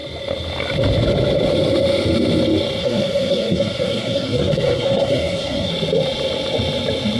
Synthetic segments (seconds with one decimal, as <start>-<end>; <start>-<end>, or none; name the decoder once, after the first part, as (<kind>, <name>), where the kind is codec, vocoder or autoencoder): 2.8-5.7 (codec, SNAC)